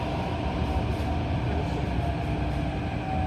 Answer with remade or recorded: recorded